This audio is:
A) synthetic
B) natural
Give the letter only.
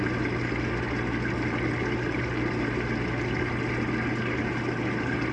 B